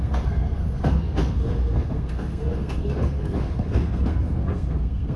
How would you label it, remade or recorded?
remade